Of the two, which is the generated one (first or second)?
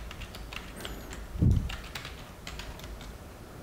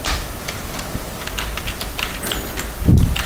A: second